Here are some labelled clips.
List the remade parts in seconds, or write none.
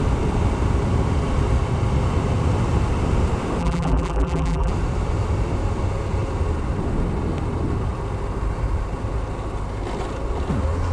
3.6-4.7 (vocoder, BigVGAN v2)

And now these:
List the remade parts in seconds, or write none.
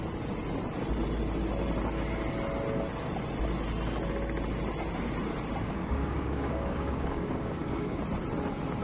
5.6-8.0 (codec, DAC)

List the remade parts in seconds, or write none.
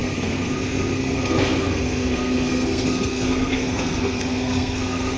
0.0-5.2 (codec, SNAC)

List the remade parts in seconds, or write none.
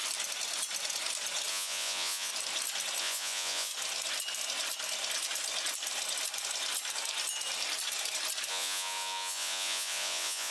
1.5-2.3 (vocoder, Vocos); 3.0-3.7; 8.5-10.5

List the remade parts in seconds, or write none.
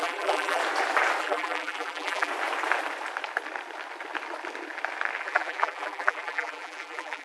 0.0-0.6 (vocoder, BigVGAN v2); 1.2-2.3; 5.2-7.2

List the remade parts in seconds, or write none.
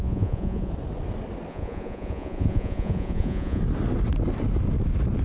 0.0-0.7 (vocoder, Vocos); 1.5-3.6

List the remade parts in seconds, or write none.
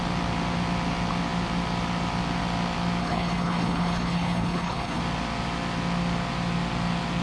3.0-5.0 (codec, HILCodec)